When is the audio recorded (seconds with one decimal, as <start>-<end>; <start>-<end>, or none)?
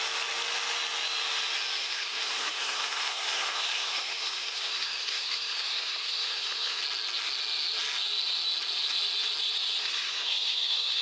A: 0.0-1.8; 6.8-9.8